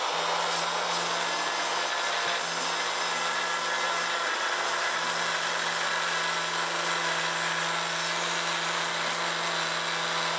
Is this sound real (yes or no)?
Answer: yes